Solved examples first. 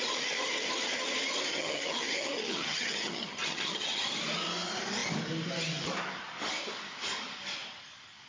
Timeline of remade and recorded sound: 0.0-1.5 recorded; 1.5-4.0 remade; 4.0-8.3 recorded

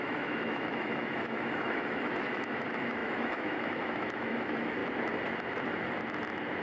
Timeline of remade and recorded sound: 0.0-4.8 remade; 4.8-6.6 recorded

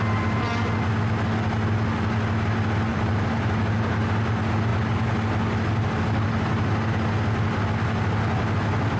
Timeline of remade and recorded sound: 0.0-2.9 recorded; 2.9-3.6 remade; 3.6-9.0 recorded

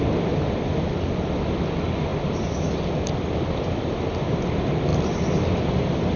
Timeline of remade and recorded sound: 0.0-6.2 recorded

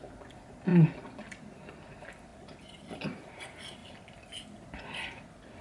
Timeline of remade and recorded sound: 0.0-0.7 remade; 0.7-1.4 recorded; 1.4-3.8 remade; 3.8-4.8 recorded; 4.8-5.6 remade

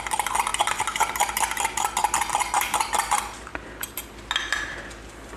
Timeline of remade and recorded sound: 0.0-5.4 recorded

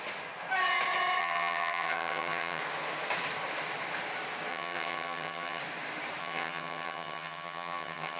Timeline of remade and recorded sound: 0.0-1.2 recorded; 1.2-2.6 remade; 2.6-4.5 recorded; 4.5-5.6 remade; 5.6-6.2 recorded; 6.2-8.2 remade